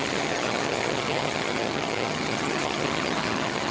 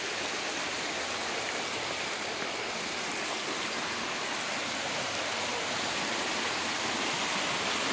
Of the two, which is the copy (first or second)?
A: first